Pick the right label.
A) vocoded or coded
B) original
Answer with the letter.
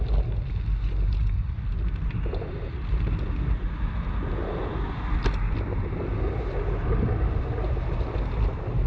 B